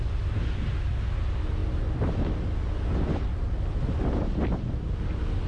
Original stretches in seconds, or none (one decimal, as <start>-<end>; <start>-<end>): 0.0-5.5

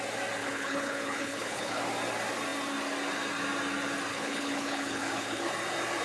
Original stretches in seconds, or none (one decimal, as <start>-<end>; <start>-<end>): 0.0-0.4; 1.8-4.1; 5.5-6.0